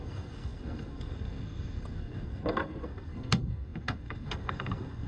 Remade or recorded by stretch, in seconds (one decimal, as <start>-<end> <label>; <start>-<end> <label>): 0.0-5.1 remade